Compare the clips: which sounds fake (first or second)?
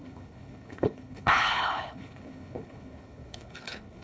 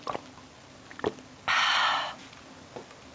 first